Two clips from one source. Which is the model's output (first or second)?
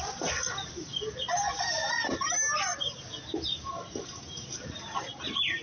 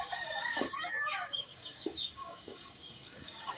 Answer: second